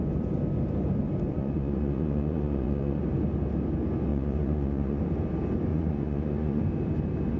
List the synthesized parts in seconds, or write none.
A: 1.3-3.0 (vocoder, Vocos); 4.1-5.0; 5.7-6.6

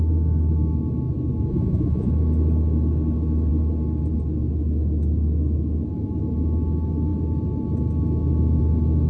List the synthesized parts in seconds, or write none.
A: 1.5-2.1 (vocoder, Vocos)